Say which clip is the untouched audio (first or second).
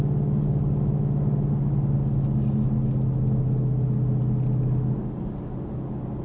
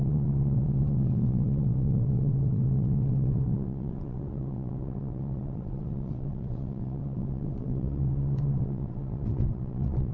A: first